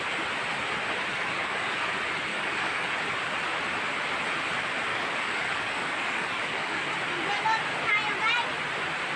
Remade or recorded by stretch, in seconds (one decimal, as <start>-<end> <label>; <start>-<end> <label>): 0.0-1.1 recorded; 1.1-1.9 remade; 1.9-2.3 recorded; 2.3-2.9 remade; 2.9-4.9 recorded; 4.9-6.9 remade; 6.9-9.2 recorded